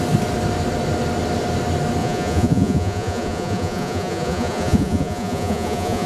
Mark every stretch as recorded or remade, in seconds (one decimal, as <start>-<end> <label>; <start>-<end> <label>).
0.0-2.0 recorded; 2.0-6.1 remade